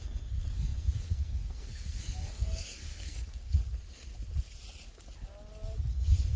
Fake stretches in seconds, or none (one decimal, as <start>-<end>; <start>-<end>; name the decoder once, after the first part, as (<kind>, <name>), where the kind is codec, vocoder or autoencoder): 0.0-3.6 (codec, SNAC); 5.9-6.4